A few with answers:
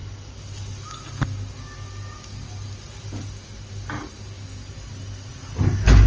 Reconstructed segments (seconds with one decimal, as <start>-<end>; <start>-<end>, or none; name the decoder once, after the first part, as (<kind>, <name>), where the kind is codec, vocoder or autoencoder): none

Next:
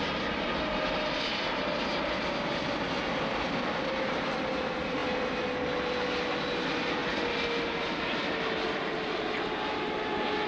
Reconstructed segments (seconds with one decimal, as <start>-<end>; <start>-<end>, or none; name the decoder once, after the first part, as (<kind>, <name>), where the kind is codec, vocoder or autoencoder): none

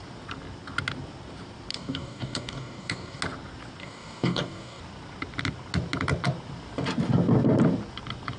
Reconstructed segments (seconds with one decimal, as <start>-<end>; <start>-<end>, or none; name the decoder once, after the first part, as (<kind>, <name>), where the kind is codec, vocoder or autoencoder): 1.7-3.2 (codec, DAC); 3.8-4.8

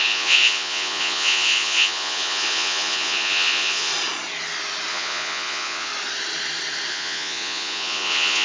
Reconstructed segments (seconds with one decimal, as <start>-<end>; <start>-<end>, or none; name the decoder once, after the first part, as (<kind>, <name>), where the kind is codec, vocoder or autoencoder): 0.0-3.9 (vocoder, Vocos); 4.9-5.9; 6.9-8.4

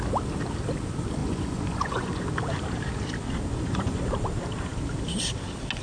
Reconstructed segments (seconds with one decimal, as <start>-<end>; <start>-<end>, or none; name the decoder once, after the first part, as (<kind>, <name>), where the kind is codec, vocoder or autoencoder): 1.2-2.3 (vocoder, Vocos); 3.5-4.0

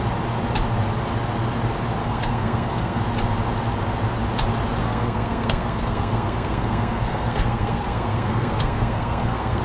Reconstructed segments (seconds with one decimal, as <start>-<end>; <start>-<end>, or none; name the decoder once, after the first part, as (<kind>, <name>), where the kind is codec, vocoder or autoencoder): 2.0-3.0 (codec, SNAC); 4.8-9.6

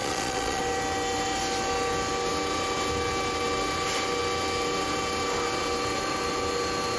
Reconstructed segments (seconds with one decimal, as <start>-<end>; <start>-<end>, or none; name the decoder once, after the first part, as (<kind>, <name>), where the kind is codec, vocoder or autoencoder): 0.0-0.6 (vocoder, Vocos)

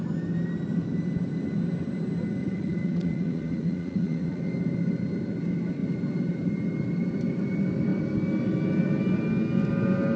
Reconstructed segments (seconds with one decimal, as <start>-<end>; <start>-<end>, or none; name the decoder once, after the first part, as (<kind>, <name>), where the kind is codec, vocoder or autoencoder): 2.4-4.5 (vocoder, Vocos)